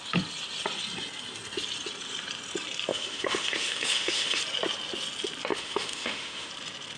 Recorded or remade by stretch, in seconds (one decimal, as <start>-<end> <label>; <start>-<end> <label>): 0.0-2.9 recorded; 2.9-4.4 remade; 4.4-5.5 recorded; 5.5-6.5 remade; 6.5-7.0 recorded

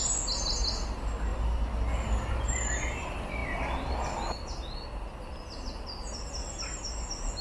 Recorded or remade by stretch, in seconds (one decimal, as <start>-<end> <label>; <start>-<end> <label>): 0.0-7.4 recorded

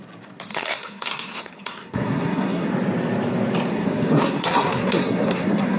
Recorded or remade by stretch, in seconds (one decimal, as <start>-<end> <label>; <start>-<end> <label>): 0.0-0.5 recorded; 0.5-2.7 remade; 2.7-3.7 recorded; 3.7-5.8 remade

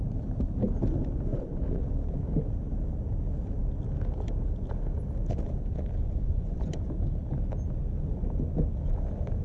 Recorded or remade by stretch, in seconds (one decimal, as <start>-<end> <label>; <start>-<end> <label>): 0.0-1.3 recorded; 1.3-1.8 remade; 1.8-6.0 recorded; 6.0-6.8 remade; 6.8-9.4 recorded